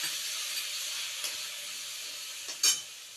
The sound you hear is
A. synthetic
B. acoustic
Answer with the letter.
B